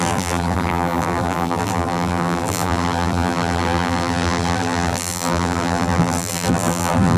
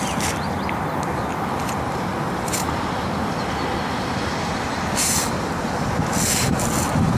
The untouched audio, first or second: second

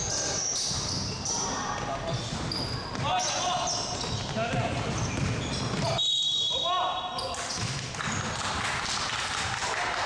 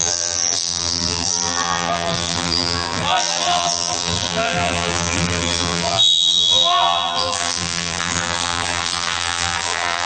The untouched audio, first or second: first